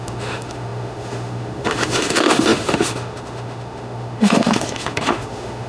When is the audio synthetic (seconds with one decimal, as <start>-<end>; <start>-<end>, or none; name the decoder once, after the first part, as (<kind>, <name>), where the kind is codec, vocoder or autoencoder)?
0.0-5.7 (autoencoder, DAC-VAE)